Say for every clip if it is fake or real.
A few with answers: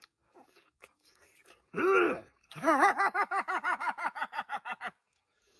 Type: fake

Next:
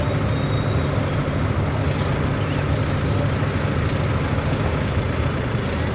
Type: real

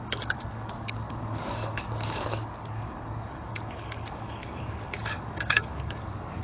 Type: fake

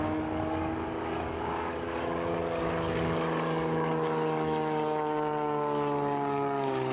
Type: fake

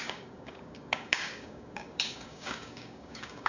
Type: fake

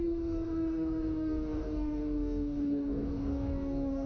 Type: fake